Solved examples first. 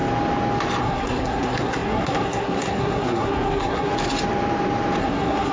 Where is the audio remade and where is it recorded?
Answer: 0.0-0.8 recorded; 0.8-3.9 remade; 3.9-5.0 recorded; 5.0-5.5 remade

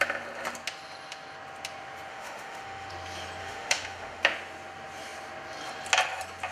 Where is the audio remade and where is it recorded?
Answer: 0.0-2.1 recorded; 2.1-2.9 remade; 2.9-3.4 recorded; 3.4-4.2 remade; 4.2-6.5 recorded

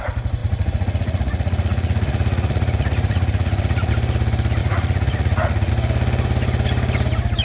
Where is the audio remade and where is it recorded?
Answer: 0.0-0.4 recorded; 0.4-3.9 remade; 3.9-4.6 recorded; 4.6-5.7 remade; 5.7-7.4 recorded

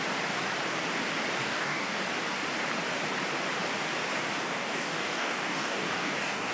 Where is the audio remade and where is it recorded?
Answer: 0.0-1.4 recorded; 1.4-2.0 remade; 2.0-4.4 recorded; 4.4-6.5 remade

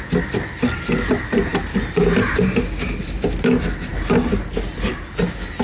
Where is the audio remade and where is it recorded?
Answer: 0.0-5.6 recorded

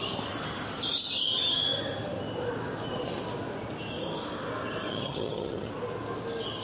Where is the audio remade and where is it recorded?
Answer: 0.0-4.9 recorded; 4.9-5.7 remade; 5.7-6.6 recorded